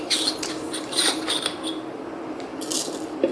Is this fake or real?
real